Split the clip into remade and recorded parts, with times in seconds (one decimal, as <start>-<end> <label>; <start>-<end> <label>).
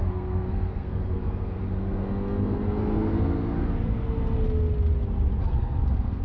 0.0-3.7 remade; 3.7-5.4 recorded; 5.4-6.2 remade